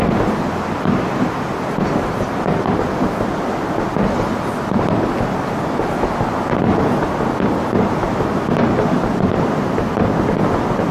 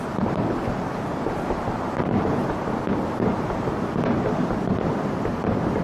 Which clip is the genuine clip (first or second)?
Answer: first